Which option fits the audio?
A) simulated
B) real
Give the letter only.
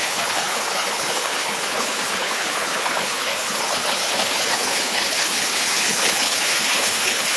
A